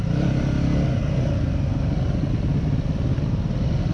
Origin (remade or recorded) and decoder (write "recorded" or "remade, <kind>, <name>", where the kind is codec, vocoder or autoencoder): recorded